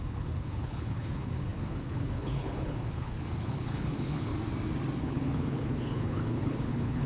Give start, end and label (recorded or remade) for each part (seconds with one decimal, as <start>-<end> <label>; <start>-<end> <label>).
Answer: 0.0-4.3 remade; 4.3-5.0 recorded; 5.0-7.1 remade

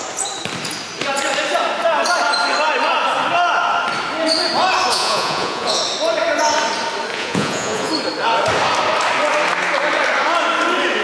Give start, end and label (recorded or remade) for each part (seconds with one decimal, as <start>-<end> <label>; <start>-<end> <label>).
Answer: 0.0-4.9 recorded; 4.9-5.8 remade; 5.8-7.1 recorded; 7.1-7.9 remade; 7.9-11.0 recorded

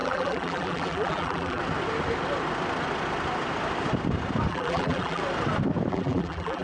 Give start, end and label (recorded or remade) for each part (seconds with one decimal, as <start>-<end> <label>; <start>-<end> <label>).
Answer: 0.0-1.6 remade; 1.6-4.5 recorded; 4.5-5.2 remade; 5.2-5.9 recorded; 5.9-6.6 remade

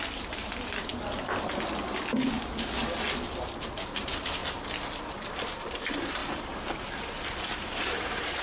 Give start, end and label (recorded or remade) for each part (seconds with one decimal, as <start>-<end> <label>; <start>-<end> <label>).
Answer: 0.0-0.9 remade; 0.9-4.0 recorded; 4.0-4.4 remade; 4.4-5.1 recorded; 5.1-6.2 remade; 6.2-7.4 recorded; 7.4-8.4 remade